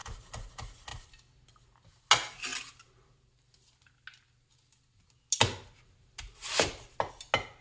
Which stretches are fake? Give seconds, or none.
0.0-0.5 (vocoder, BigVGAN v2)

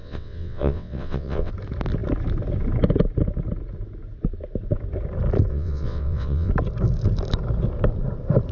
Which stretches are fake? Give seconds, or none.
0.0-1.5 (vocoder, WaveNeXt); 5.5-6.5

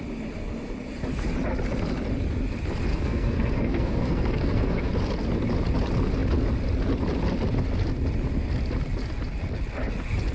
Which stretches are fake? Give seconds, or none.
2.9-4.9 (codec, SNAC)

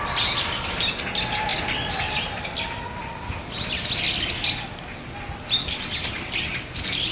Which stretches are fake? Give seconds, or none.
none